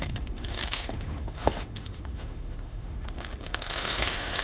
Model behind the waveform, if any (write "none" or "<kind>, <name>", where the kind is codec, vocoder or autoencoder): autoencoder, DAC-VAE